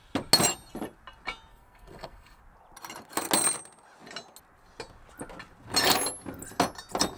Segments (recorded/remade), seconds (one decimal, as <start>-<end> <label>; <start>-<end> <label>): 0.0-1.5 recorded; 1.5-2.4 remade; 2.4-7.2 recorded